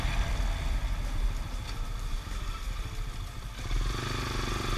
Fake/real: real